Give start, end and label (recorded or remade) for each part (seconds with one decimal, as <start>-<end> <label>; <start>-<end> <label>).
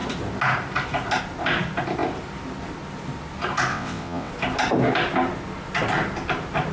0.0-3.7 recorded; 3.7-4.3 remade; 4.3-6.7 recorded